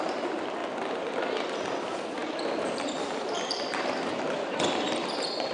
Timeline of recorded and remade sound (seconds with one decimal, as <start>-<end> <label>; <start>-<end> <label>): 0.0-0.6 remade; 0.6-1.8 recorded; 1.8-5.5 remade